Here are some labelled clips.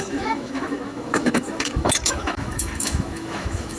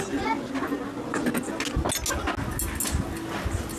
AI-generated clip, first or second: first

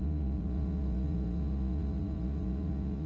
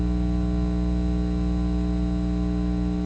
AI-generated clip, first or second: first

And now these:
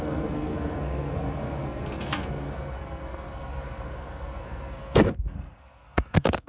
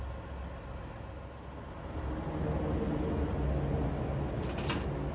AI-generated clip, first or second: first